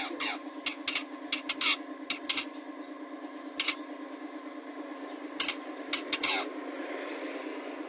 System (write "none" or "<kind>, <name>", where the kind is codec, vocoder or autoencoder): none